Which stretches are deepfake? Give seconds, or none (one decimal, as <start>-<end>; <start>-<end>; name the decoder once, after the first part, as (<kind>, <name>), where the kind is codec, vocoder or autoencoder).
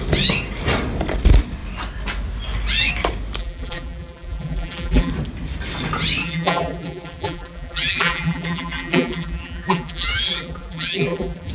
3.4-5.1 (vocoder, BigVGAN v2); 6.2-11.5